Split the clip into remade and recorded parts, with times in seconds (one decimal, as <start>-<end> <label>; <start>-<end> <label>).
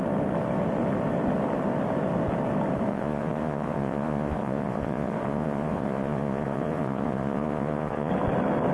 0.0-2.9 recorded; 2.9-8.1 remade; 8.1-8.7 recorded